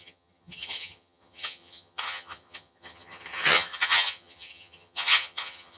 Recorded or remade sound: remade